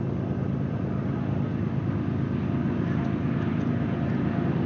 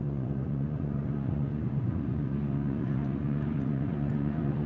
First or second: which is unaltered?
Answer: first